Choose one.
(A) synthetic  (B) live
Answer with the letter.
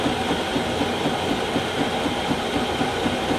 B